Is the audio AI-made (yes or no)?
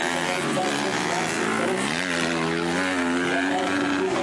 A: no